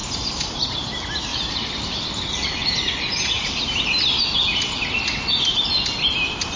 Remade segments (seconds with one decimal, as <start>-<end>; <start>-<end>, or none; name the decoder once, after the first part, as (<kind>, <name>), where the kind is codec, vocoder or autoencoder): 0.0-0.7 (vocoder, BigVGAN v2); 1.3-3.7